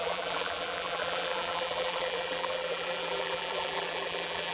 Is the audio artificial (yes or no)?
yes